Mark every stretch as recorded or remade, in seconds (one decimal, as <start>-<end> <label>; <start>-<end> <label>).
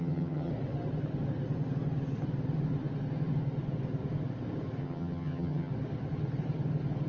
0.0-0.5 remade; 0.5-4.8 recorded; 4.8-5.7 remade; 5.7-7.1 recorded